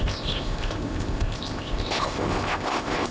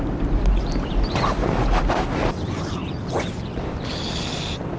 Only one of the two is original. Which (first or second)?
second